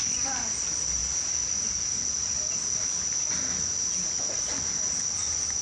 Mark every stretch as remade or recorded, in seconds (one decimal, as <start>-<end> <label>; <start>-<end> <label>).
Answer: 0.0-5.6 recorded